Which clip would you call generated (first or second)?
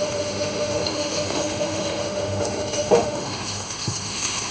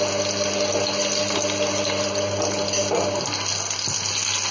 first